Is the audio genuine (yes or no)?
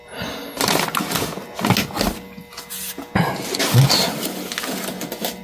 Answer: yes